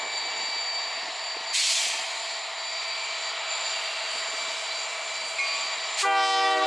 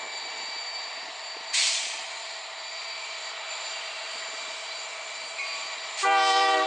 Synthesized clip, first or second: second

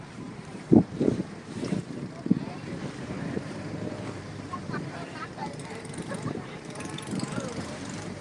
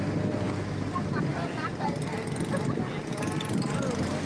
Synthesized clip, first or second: first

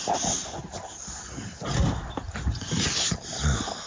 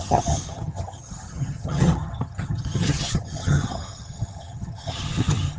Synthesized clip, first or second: second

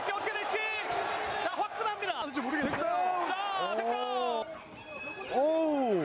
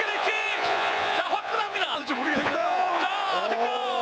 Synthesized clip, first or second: second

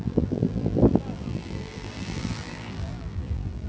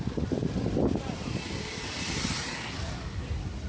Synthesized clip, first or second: first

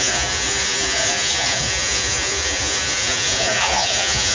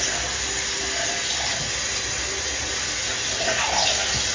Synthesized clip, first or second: first